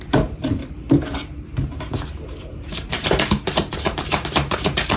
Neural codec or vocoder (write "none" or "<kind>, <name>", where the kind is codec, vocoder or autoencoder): vocoder, BigVGAN v2